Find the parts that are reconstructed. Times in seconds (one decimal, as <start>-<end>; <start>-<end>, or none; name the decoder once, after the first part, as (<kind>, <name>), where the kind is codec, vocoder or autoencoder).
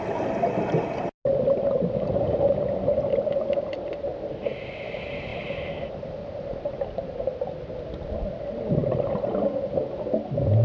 none